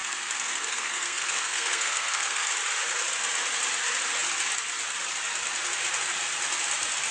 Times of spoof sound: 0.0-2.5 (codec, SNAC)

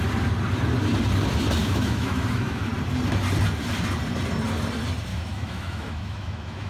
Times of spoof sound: 1.6-2.7 (autoencoder, DAC-VAE); 5.1-6.7